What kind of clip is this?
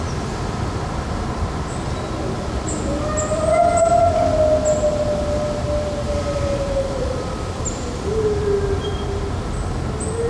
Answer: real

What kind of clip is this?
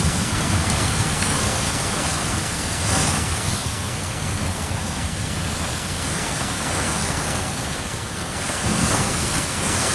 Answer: fake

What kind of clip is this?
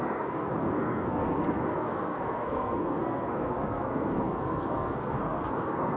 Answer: fake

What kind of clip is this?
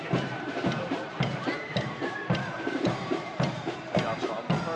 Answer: fake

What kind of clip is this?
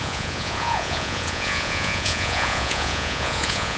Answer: fake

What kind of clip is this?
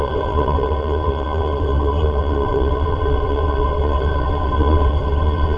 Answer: fake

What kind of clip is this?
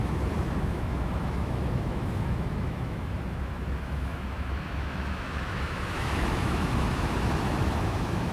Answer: fake